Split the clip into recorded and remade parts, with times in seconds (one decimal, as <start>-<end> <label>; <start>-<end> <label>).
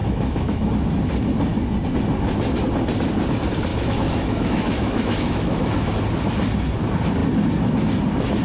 0.0-0.7 remade; 0.7-3.7 recorded; 3.7-5.9 remade; 5.9-8.4 recorded